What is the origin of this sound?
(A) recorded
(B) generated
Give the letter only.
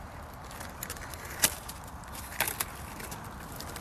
A